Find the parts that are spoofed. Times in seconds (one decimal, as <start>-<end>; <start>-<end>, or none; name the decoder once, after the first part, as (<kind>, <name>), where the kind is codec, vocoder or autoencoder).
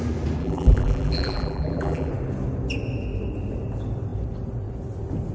0.4-2.1 (vocoder, BigVGAN v2)